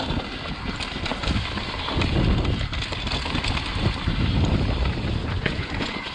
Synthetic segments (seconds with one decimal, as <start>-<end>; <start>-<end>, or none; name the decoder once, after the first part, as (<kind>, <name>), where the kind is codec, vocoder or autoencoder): 5.2-6.1 (vocoder, Vocos)